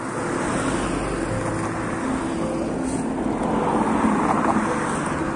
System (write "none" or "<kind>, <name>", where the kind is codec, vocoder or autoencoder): none